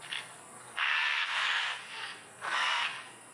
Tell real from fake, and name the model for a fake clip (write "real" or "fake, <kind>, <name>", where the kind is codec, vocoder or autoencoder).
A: fake, codec, SNAC